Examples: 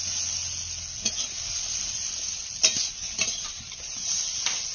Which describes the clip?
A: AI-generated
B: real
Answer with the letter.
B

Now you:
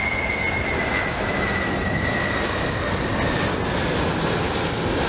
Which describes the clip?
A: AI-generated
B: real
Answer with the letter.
B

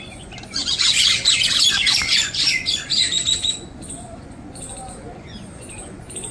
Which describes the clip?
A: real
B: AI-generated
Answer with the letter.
B